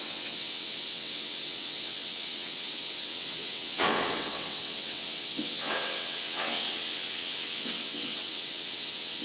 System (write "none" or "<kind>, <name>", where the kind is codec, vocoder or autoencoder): vocoder, WaveNeXt